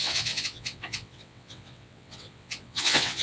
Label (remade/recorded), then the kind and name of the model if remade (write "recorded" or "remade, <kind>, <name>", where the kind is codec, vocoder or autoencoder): remade, vocoder, WaveNeXt